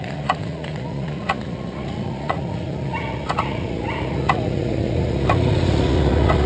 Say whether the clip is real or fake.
fake